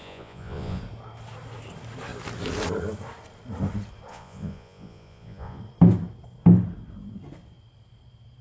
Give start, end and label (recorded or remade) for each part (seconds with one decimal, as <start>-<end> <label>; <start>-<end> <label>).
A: 0.0-0.8 remade; 0.8-4.1 recorded; 4.1-5.6 remade; 5.6-8.4 recorded